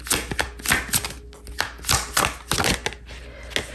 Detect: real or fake real